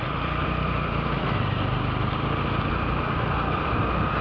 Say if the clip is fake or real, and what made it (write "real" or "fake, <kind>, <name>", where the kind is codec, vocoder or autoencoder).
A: fake, vocoder, BigVGAN v2